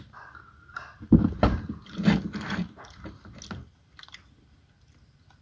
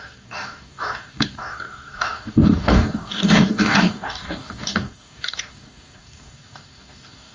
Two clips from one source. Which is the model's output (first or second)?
second